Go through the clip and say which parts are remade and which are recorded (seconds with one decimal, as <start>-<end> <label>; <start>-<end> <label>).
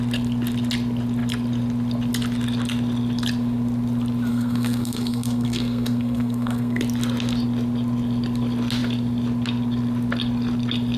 0.0-4.3 recorded; 4.3-6.8 remade; 6.8-11.0 recorded